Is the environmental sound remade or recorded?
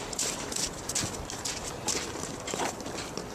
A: recorded